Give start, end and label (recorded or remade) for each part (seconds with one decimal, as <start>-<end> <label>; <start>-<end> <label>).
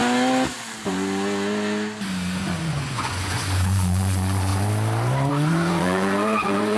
0.0-2.4 recorded; 2.4-4.5 remade; 4.5-5.3 recorded; 5.3-6.8 remade